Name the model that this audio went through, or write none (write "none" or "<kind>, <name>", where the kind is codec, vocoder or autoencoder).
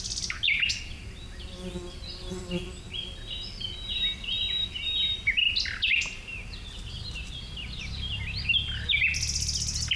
none